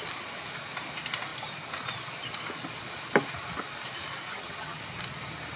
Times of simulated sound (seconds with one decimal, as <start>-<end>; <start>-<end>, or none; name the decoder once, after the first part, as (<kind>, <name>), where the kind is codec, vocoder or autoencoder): 4.3-4.8 (vocoder, HiFi-GAN)